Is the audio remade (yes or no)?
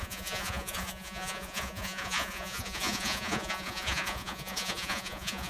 yes